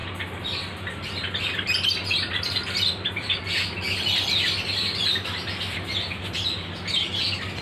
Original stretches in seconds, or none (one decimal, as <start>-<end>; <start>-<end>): 0.0-7.6